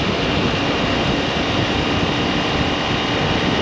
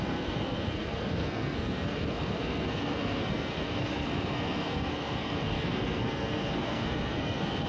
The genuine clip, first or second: first